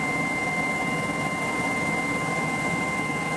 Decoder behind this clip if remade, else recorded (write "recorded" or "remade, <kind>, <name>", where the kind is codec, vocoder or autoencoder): recorded